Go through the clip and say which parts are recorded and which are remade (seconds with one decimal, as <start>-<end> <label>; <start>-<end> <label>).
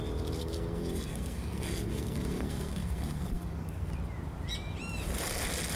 0.0-0.4 recorded; 0.4-3.9 remade; 3.9-5.8 recorded